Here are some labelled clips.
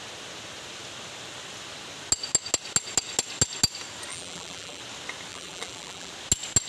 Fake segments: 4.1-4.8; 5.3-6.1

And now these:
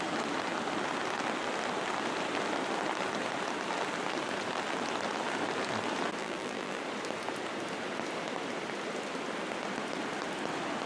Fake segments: 6.2-6.8